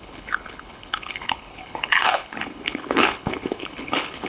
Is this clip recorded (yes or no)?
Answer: no